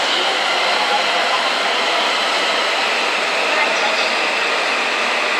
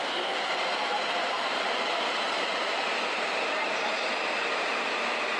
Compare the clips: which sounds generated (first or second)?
second